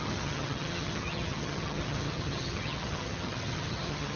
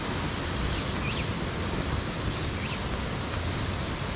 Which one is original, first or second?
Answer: second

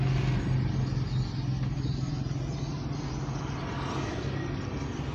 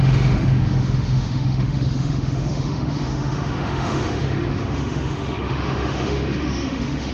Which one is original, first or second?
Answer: first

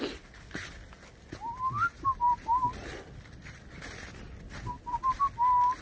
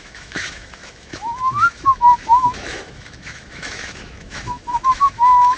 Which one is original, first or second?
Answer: first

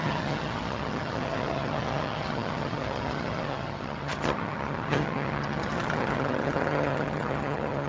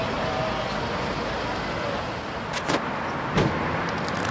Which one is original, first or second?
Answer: second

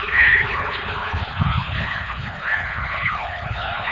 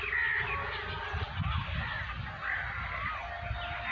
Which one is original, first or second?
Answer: second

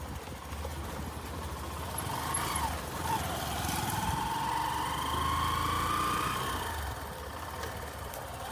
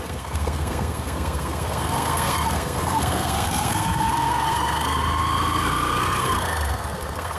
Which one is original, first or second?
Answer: first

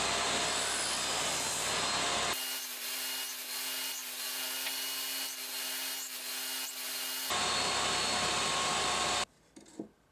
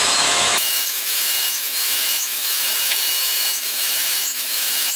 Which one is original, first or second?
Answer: first